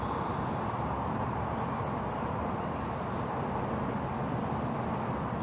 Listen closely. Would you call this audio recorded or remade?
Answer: recorded